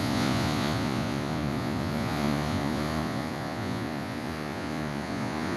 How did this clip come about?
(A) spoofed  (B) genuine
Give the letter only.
A